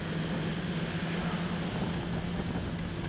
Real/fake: real